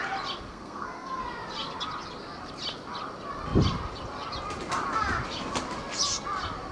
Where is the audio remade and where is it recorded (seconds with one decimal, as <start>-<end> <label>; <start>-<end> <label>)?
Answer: 0.0-0.5 recorded; 0.5-1.2 remade; 1.2-6.7 recorded